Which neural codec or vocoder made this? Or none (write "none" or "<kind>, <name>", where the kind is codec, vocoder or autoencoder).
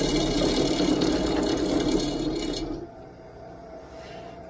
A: none